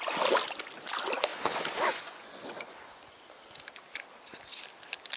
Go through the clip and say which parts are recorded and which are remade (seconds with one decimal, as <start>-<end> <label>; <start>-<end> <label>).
0.0-1.3 recorded; 1.3-3.2 remade; 3.2-5.2 recorded